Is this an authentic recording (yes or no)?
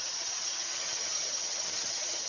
no